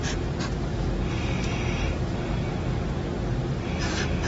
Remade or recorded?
recorded